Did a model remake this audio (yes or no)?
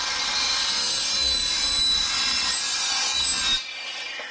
no